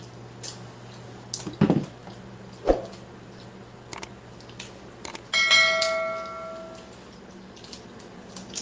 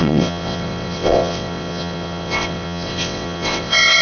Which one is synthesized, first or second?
second